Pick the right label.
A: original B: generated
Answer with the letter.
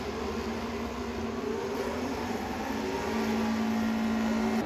A